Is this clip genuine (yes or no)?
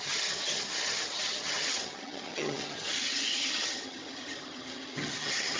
no